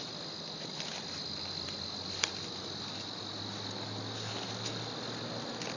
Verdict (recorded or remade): recorded